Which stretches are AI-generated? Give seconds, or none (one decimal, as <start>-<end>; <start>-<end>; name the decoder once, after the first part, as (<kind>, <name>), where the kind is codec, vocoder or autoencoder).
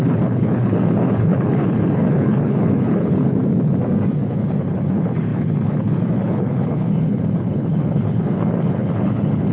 0.0-3.4 (codec, HILCodec); 4.3-9.5